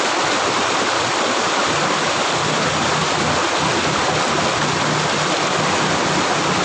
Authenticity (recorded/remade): recorded